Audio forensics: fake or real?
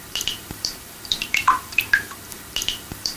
fake